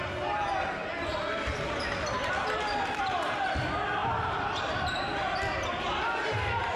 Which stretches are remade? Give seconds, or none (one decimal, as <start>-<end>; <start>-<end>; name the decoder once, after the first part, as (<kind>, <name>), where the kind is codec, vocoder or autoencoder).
4.0-6.0 (vocoder, BigVGAN v2)